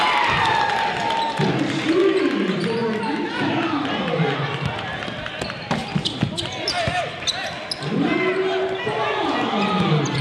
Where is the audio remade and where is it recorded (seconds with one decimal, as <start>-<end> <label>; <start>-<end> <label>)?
0.0-2.8 remade; 2.8-3.8 recorded; 3.8-8.3 remade; 8.3-9.6 recorded; 9.6-10.2 remade